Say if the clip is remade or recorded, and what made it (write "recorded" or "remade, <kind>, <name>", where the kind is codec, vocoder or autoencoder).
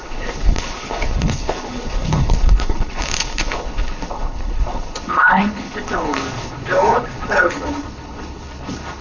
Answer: remade, codec, HILCodec